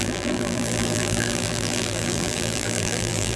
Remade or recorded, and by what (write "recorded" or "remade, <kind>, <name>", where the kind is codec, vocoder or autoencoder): remade, vocoder, BigVGAN v2